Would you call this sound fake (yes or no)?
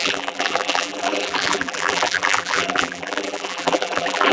yes